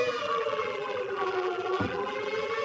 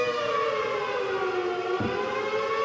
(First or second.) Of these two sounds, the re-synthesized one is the first